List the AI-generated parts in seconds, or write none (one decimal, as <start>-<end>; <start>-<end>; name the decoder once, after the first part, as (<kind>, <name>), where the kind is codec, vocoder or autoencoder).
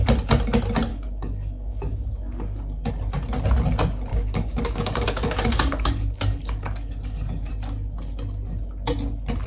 0.9-2.9 (codec, DAC); 4.1-7.5